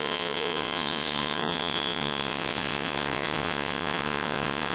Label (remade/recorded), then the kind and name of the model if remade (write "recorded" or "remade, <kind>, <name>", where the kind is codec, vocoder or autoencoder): remade, vocoder, WaveNeXt